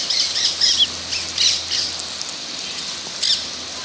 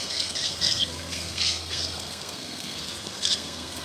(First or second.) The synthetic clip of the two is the second